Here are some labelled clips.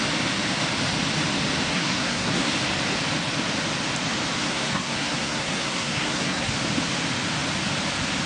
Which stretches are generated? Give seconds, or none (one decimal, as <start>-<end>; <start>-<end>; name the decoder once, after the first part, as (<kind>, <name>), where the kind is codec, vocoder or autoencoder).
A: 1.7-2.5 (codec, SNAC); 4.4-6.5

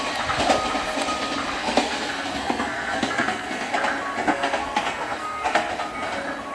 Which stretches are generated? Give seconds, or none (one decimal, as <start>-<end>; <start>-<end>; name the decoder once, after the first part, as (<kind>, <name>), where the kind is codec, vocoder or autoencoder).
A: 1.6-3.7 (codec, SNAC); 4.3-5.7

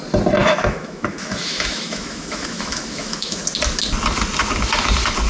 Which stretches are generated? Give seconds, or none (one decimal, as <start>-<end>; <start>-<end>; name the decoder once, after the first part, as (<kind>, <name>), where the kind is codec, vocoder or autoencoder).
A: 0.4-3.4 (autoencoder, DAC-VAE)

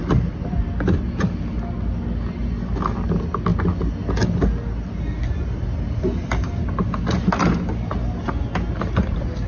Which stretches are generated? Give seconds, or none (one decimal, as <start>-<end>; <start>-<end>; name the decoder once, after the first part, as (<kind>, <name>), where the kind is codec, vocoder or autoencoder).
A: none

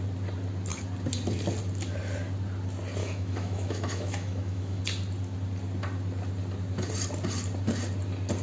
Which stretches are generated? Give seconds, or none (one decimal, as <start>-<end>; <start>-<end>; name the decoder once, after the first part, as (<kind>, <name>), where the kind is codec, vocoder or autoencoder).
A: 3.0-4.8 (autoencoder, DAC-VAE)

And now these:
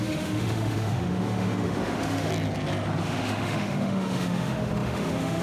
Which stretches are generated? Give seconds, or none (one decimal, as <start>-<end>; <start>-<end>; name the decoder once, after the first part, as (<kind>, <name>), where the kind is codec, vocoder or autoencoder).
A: 0.0-2.3 (autoencoder, DAC-VAE); 3.0-5.4

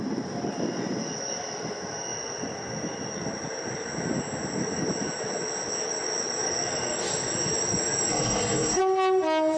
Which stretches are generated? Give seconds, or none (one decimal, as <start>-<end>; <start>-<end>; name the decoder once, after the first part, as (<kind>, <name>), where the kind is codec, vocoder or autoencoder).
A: 8.1-8.8 (codec, SNAC)

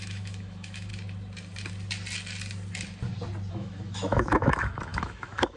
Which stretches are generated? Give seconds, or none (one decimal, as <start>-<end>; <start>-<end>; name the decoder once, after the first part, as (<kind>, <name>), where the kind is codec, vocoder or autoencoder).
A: 0.0-0.9 (autoencoder, DAC-VAE); 3.5-5.6